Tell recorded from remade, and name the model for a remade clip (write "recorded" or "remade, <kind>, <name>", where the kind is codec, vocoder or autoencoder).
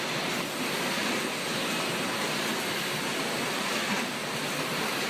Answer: recorded